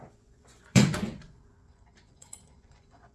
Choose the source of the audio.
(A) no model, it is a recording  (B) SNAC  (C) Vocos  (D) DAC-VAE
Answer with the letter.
C